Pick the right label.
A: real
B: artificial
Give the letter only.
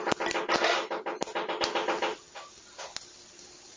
A